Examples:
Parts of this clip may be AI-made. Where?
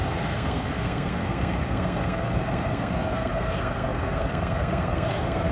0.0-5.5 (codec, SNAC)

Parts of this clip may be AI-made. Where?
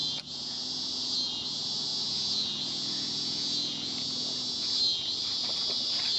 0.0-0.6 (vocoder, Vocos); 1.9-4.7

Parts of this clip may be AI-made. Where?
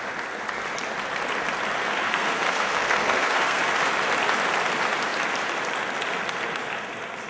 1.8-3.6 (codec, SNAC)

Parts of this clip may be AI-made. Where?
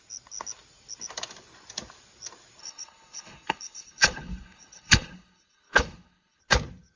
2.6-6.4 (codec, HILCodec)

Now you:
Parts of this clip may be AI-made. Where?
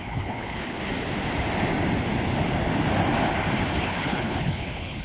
0.0-0.8 (codec, HILCodec); 3.8-5.0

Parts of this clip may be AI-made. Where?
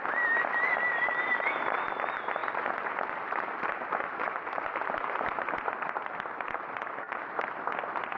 2.4-7.3 (vocoder, BigVGAN v2)